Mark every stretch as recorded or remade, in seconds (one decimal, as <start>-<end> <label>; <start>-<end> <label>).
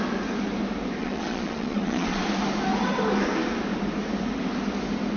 0.0-1.0 recorded; 1.0-2.2 remade; 2.2-5.2 recorded